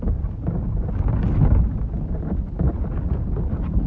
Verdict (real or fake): real